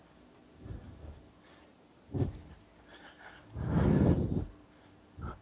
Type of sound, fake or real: real